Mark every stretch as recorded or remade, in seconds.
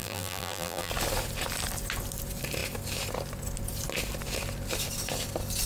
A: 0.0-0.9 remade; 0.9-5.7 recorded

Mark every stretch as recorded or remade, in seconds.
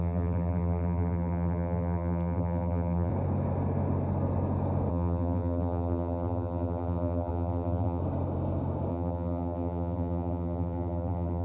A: 0.0-3.1 remade; 3.1-4.9 recorded; 4.9-8.0 remade; 8.0-8.9 recorded; 8.9-11.4 remade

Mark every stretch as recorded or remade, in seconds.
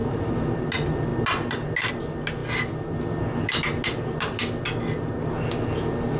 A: 0.0-0.6 remade; 0.6-6.2 recorded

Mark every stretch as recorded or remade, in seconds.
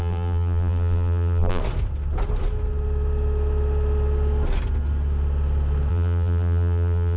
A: 0.0-1.6 remade; 1.6-5.9 recorded; 5.9-7.2 remade